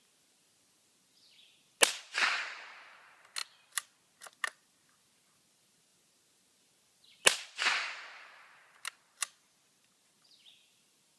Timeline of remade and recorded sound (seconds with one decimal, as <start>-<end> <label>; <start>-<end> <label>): 0.0-11.2 recorded

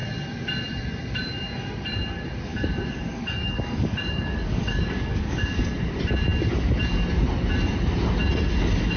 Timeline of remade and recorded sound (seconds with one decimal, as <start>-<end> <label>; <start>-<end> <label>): 0.0-2.5 recorded; 2.5-5.6 remade; 5.6-9.0 recorded